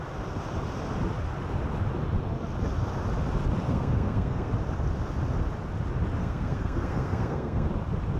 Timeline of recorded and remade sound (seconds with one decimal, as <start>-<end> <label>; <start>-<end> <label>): 0.0-3.7 recorded; 3.7-4.5 remade; 4.5-6.2 recorded; 6.2-7.7 remade; 7.7-8.2 recorded